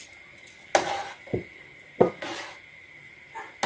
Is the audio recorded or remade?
recorded